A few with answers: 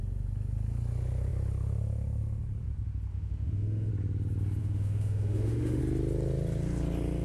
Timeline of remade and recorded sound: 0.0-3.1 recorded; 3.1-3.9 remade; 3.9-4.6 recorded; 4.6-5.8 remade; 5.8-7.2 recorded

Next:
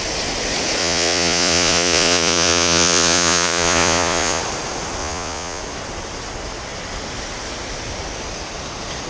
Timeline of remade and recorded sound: 0.0-0.8 recorded; 0.8-4.4 remade; 4.4-5.0 recorded; 5.0-5.6 remade; 5.6-9.1 recorded

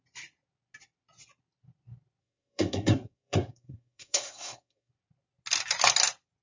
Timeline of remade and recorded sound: 0.0-2.2 recorded; 2.2-4.9 remade; 4.9-6.4 recorded

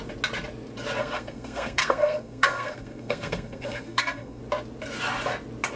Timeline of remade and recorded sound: 0.0-1.0 recorded; 1.0-4.4 remade; 4.4-5.8 recorded

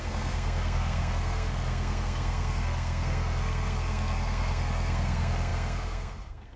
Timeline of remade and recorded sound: 0.0-6.6 remade

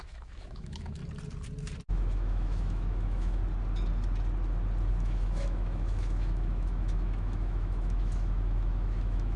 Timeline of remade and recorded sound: 0.0-1.0 remade; 1.0-1.9 recorded; 1.9-3.4 remade; 3.4-4.9 recorded; 4.9-9.4 remade